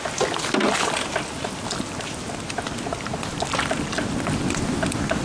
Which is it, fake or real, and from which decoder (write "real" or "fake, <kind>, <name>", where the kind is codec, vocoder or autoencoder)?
real